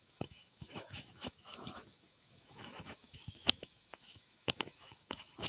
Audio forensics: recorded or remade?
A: remade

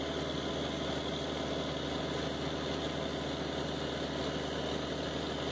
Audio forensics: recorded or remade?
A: recorded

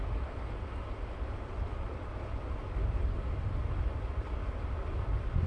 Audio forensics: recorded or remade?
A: recorded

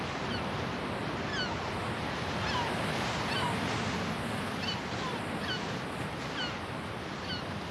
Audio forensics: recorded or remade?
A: recorded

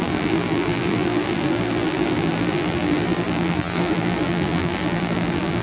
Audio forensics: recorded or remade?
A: remade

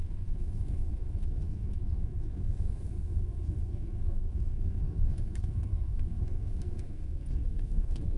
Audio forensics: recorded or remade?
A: remade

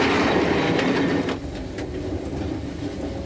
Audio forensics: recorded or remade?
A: recorded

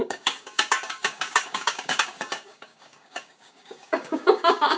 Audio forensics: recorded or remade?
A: remade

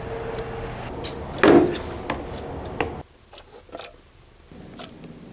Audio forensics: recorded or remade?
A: recorded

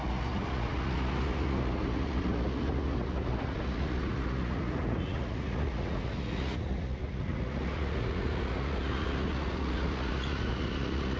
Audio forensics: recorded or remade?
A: remade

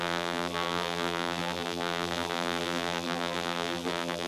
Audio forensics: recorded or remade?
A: remade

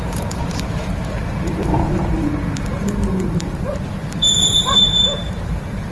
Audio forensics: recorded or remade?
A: remade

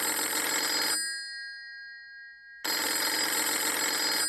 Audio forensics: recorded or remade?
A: recorded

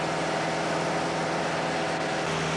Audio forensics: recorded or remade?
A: recorded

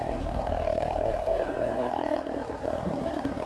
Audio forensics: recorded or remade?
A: remade